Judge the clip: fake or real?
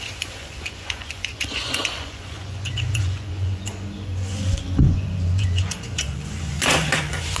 fake